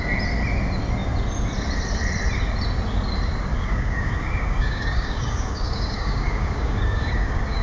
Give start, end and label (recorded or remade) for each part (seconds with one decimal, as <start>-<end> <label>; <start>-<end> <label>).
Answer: 0.0-3.5 recorded; 3.5-7.6 remade